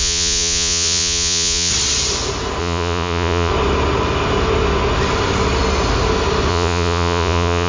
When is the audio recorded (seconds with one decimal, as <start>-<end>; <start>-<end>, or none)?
1.7-2.6; 3.5-6.5